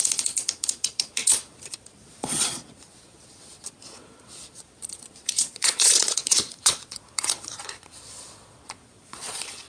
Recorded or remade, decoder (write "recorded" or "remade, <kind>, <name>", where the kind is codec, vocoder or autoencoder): remade, vocoder, Vocos